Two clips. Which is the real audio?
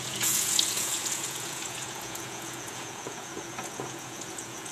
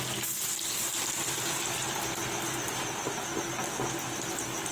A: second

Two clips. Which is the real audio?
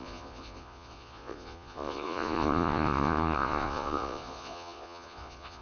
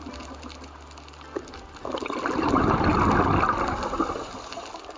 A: second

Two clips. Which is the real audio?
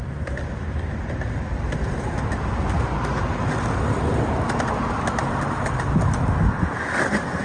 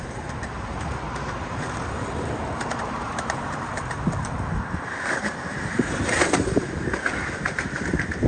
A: first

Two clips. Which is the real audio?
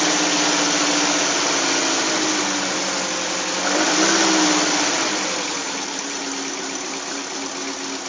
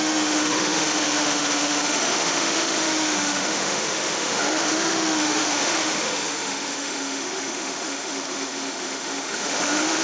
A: first